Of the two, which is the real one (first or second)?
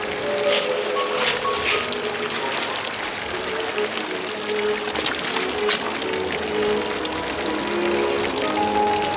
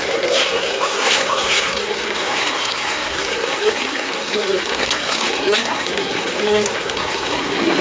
first